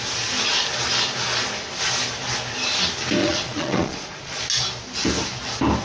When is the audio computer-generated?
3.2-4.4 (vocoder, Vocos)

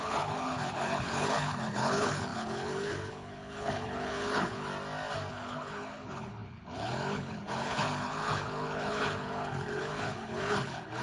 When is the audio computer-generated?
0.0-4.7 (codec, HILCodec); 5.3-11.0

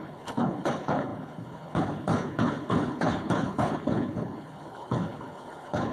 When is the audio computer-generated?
0.0-5.9 (codec, HILCodec)